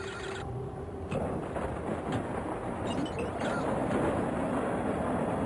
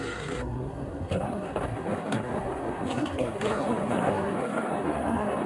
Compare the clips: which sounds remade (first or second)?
second